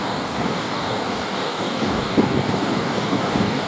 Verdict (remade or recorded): remade